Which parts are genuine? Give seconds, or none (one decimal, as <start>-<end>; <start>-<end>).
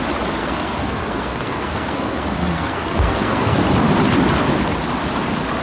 0.0-0.4; 3.6-5.6